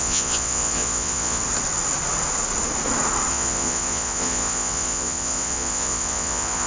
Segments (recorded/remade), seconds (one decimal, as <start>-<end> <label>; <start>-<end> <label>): 0.0-1.4 remade; 1.4-3.3 recorded; 3.3-6.7 remade